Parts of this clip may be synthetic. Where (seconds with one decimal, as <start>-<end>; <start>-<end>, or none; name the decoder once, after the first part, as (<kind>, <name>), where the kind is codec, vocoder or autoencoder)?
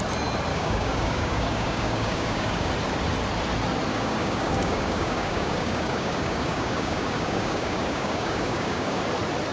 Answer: 0.5-2.7 (codec, DAC); 3.9-9.0